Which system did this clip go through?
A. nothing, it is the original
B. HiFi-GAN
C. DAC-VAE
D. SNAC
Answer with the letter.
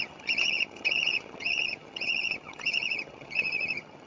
B